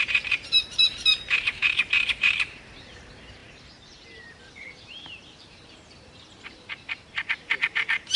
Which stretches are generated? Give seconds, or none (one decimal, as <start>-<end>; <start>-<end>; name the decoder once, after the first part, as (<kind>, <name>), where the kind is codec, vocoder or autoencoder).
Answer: 0.0-8.2 (vocoder, BigVGAN v2)